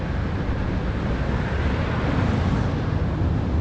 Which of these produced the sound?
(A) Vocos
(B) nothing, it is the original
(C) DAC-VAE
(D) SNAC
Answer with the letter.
B